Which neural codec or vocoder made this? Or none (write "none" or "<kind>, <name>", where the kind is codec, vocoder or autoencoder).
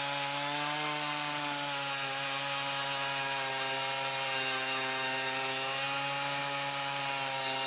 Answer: none